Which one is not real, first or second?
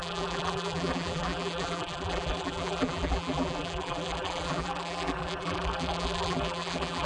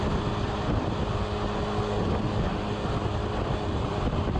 first